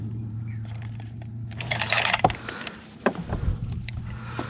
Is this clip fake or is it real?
fake